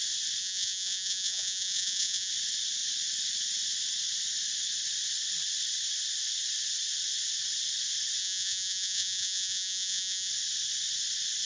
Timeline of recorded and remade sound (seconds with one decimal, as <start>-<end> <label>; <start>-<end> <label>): 0.0-0.4 recorded; 0.4-2.3 remade; 2.3-8.2 recorded; 8.2-10.3 remade; 10.3-11.5 recorded